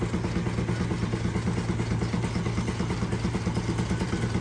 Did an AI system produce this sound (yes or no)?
no